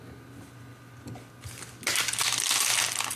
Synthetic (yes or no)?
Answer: no